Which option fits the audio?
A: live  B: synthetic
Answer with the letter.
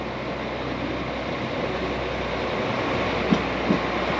A